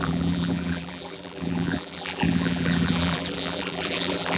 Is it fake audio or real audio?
fake